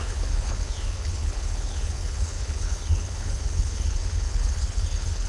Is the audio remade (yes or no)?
yes